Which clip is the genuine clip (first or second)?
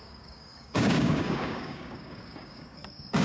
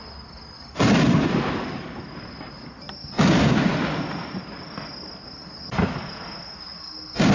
second